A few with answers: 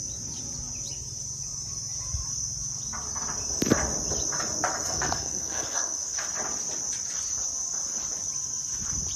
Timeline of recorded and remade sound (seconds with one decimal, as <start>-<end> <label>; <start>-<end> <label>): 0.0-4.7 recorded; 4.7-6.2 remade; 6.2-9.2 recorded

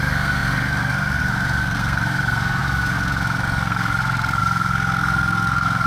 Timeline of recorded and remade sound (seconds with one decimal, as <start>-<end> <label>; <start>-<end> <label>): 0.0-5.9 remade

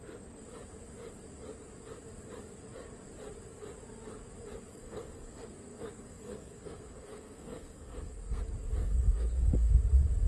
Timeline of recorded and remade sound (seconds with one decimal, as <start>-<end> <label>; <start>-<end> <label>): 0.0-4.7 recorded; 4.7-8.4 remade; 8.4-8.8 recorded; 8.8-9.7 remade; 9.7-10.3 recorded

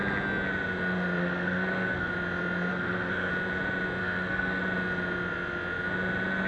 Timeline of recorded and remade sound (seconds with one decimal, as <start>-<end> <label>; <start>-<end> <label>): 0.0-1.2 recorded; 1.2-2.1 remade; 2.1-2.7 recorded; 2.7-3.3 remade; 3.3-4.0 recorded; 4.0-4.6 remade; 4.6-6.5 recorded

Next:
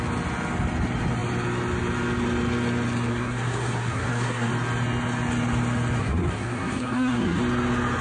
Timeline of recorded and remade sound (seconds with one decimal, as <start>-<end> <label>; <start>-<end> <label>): 0.0-3.1 recorded; 3.1-4.5 remade; 4.5-6.0 recorded; 6.0-7.4 remade; 7.4-8.0 recorded